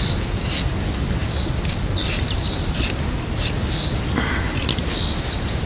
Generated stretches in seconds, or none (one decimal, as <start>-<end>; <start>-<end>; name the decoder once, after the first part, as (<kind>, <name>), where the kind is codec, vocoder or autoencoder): none